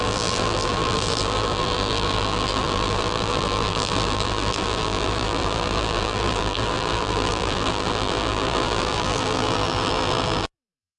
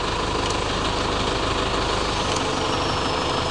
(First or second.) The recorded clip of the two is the second